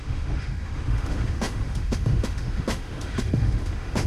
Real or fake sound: fake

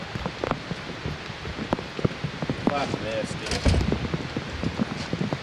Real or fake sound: real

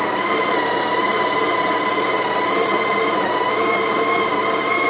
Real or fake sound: real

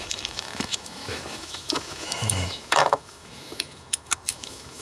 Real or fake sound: fake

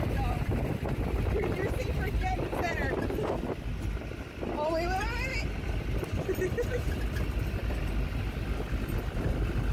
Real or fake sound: real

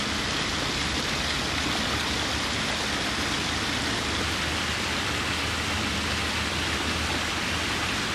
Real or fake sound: real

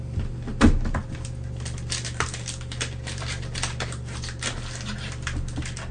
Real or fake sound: real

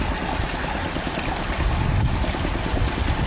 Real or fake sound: real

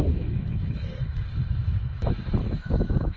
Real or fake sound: fake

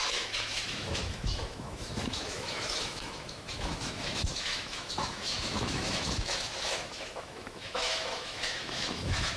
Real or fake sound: fake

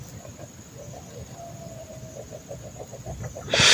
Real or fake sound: real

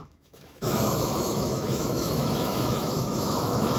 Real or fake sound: fake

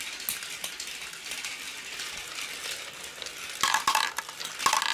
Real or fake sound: real